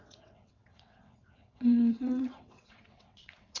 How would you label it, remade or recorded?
remade